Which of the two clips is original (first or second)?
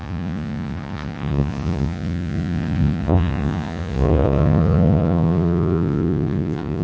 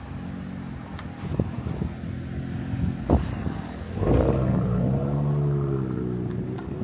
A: second